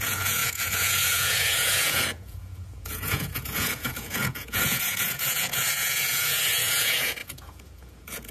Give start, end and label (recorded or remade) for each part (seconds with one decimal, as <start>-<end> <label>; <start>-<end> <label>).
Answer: 0.0-8.3 remade